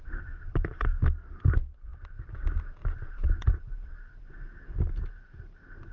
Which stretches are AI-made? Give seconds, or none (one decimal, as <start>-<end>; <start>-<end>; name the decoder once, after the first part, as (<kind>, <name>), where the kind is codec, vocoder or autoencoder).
none